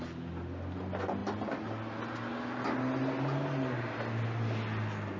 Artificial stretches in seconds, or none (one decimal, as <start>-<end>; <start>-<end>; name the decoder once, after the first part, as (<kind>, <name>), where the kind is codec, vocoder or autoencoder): none